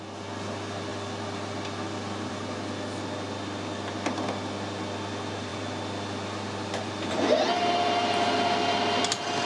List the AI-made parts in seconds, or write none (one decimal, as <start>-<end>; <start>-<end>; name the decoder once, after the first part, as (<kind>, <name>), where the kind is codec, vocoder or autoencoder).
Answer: none